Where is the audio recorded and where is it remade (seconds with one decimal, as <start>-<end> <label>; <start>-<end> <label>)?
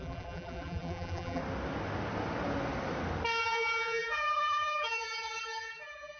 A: 0.0-1.4 remade; 1.4-3.4 recorded; 3.4-6.2 remade